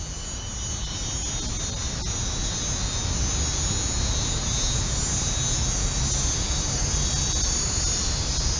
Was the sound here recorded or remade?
recorded